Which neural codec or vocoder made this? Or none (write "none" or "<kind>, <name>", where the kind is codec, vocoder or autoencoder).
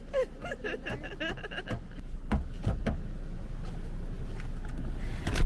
none